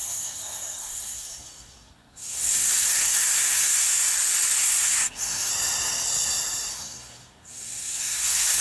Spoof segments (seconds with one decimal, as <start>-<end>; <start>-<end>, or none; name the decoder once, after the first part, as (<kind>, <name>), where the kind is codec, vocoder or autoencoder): 0.0-4.1 (codec, SNAC); 4.6-5.5; 6.7-8.6